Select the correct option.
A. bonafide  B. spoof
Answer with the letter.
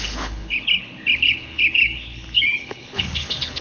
B